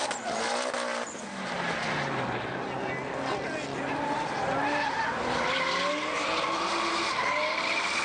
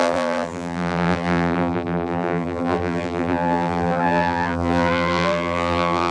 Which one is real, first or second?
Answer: first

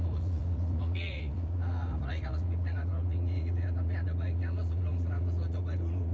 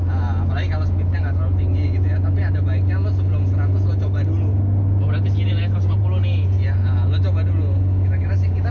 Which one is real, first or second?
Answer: second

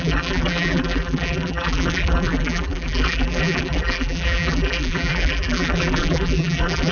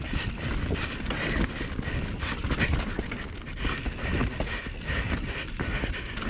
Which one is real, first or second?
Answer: second